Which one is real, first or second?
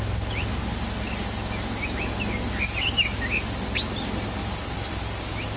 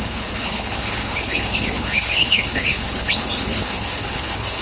first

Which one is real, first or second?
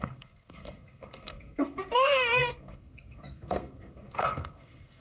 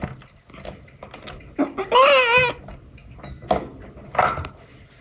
second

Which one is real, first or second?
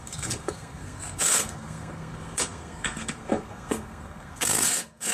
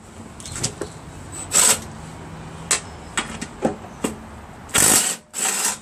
second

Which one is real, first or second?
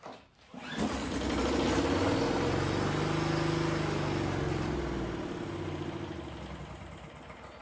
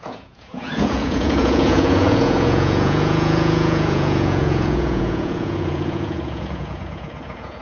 first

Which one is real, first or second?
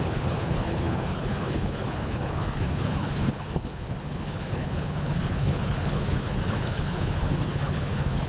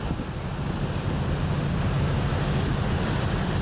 second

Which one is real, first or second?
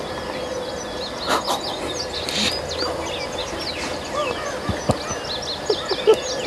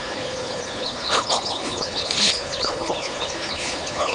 first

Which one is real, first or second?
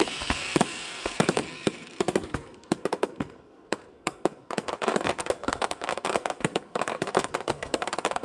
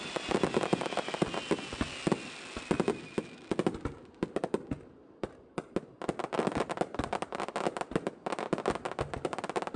second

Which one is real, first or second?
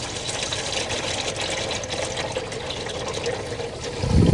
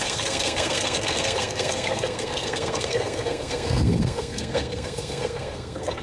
first